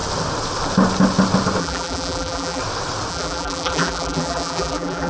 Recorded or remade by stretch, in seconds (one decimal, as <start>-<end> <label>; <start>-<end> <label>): 0.0-1.6 recorded; 1.6-2.6 remade; 2.6-3.1 recorded; 3.1-5.1 remade